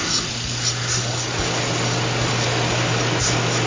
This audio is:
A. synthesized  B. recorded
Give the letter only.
B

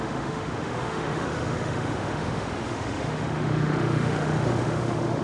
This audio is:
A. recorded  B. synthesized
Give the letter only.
B